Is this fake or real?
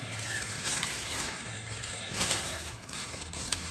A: fake